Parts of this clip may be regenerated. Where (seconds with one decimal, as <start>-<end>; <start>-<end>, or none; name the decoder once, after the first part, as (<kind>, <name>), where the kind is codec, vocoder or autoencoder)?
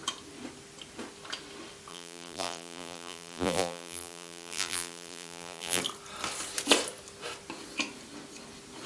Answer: 1.9-5.8 (vocoder, BigVGAN v2)